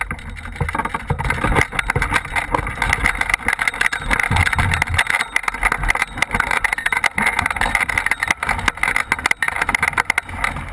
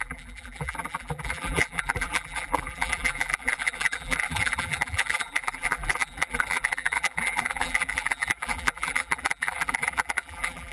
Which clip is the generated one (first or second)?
second